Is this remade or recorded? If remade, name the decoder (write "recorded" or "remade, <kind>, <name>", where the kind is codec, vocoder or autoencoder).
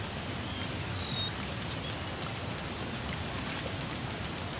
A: recorded